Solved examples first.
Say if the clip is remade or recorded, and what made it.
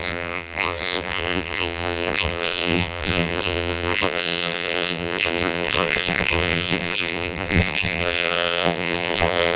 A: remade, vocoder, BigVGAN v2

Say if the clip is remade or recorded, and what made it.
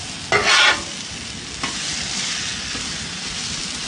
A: recorded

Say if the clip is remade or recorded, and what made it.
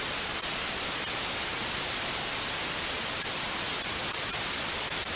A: recorded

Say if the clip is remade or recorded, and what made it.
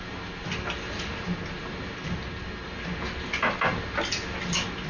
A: recorded